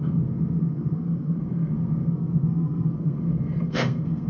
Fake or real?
fake